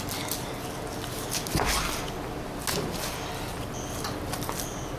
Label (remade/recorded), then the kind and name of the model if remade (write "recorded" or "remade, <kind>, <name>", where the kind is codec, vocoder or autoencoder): recorded